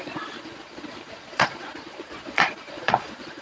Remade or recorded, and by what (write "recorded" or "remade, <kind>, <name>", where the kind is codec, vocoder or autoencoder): remade, vocoder, Vocos